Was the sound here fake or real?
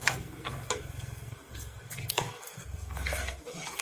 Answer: fake